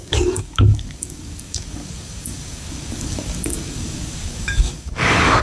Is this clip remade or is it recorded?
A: remade